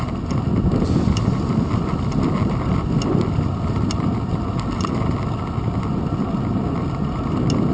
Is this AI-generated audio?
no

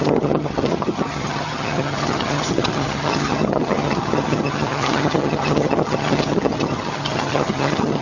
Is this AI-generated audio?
yes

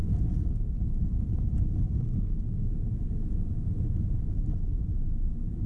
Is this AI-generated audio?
yes